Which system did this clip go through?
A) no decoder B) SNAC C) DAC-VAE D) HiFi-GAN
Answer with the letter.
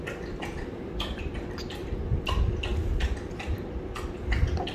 A